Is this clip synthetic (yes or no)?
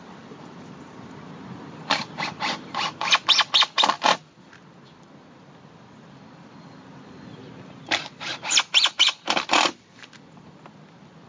yes